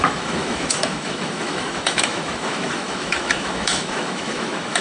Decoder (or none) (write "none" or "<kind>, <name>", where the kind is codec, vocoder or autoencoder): autoencoder, DAC-VAE